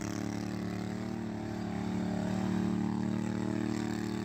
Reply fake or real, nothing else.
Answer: real